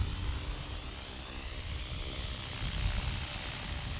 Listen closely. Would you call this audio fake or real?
real